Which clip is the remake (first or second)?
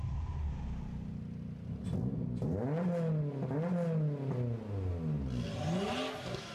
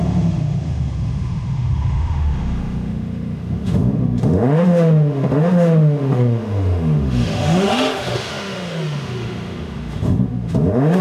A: second